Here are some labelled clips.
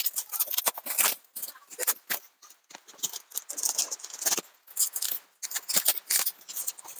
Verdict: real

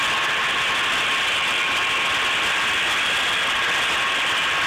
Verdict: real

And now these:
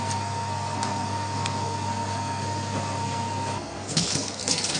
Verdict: fake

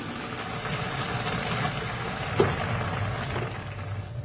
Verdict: real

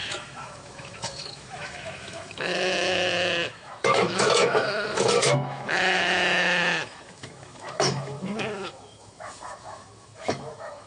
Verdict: fake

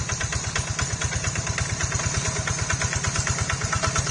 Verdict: real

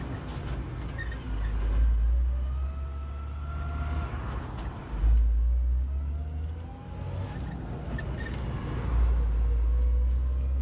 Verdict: real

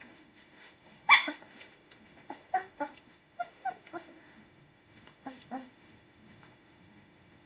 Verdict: fake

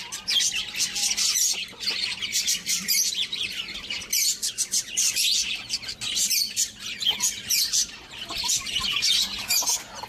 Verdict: real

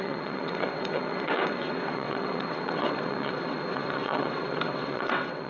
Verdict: fake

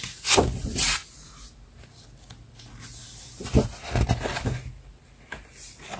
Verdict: real